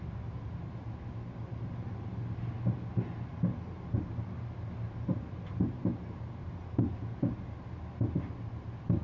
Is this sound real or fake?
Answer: real